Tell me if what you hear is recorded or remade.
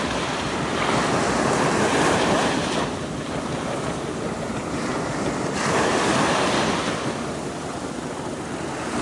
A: recorded